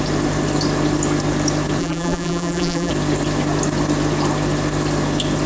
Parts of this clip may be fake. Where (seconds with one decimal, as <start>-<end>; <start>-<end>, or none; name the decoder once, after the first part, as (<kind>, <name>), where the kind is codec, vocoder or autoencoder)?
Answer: 1.8-2.9 (vocoder, BigVGAN v2)